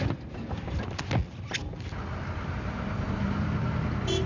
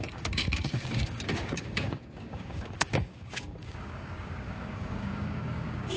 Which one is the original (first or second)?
first